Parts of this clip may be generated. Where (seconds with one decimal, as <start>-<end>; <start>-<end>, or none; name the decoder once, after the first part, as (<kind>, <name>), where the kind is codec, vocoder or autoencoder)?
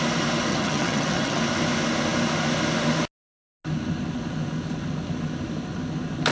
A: 0.5-1.4 (vocoder, HiFi-GAN)